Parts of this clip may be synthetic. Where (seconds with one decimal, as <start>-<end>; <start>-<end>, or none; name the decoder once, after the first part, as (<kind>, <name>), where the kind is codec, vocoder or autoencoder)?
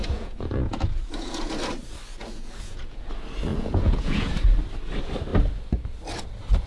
0.0-1.5 (vocoder, Vocos); 2.1-3.1; 3.5-4.3